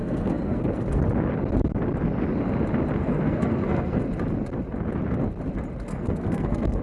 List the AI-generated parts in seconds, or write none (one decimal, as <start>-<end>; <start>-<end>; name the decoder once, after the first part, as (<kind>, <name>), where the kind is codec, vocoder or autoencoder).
0.0-1.0 (codec, SNAC); 3.0-4.0; 5.9-6.8